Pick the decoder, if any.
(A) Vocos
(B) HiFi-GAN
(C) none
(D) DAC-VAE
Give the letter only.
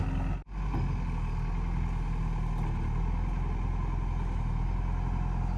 C